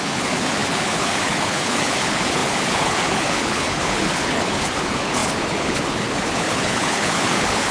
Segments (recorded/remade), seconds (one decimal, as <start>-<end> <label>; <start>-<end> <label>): 0.0-7.7 remade